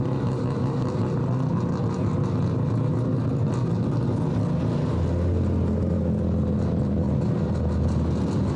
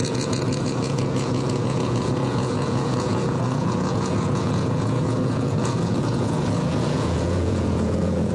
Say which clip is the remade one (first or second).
second